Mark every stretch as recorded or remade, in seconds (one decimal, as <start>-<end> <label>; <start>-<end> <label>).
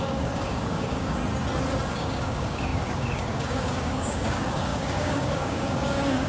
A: 0.0-1.2 remade; 1.2-1.9 recorded; 1.9-6.3 remade